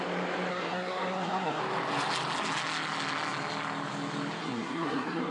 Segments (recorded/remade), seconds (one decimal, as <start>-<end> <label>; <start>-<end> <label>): 0.0-0.5 recorded; 0.5-1.6 remade; 1.6-4.4 recorded; 4.4-5.3 remade